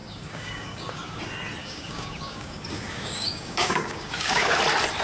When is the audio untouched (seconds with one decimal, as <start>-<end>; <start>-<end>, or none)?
1.2-1.6; 4.6-5.0